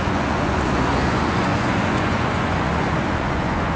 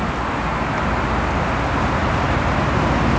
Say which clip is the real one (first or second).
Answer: second